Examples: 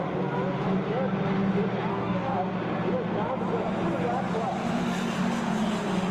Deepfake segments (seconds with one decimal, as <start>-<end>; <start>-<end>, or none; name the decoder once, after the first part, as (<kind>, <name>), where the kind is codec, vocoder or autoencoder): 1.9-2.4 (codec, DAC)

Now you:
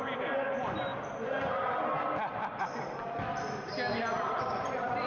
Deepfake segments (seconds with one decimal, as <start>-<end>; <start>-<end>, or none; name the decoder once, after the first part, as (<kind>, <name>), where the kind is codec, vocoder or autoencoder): none

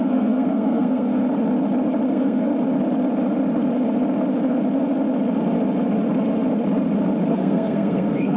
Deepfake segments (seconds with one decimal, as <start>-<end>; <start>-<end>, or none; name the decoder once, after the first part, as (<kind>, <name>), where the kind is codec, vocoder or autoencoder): 0.0-1.1 (codec, SNAC); 2.1-2.5; 7.3-8.4

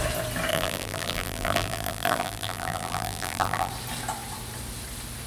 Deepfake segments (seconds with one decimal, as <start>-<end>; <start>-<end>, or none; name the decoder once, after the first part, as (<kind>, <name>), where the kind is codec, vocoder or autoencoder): 0.5-3.7 (vocoder, BigVGAN v2)

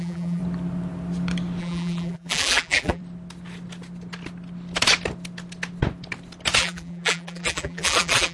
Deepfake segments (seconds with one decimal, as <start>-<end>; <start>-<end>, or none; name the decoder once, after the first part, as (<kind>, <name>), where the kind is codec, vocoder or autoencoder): 0.0-0.4 (vocoder, BigVGAN v2); 1.6-3.0; 6.6-8.3